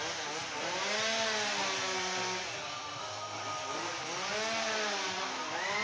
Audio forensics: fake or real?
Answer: real